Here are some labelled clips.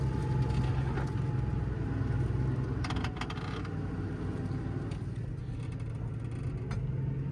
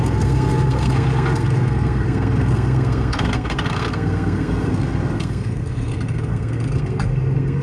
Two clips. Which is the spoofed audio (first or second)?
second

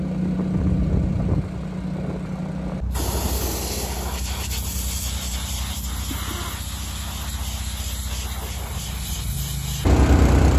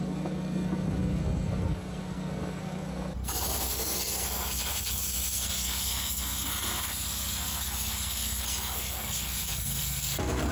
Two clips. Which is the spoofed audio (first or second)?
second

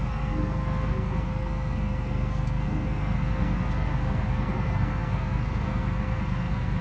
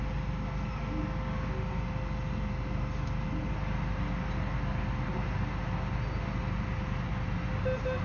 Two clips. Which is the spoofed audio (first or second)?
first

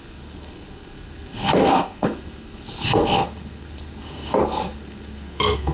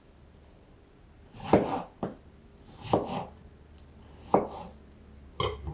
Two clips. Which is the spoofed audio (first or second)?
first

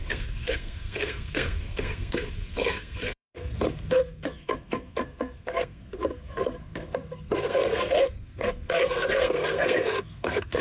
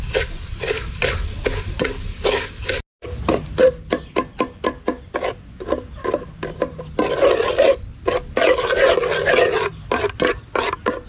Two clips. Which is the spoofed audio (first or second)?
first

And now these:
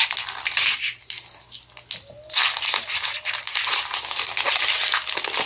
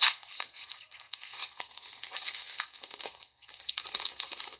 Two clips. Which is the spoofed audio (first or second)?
second